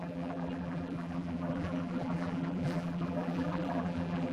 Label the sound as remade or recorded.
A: remade